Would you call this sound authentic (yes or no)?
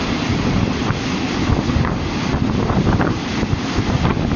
yes